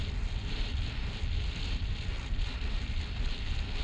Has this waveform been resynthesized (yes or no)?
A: no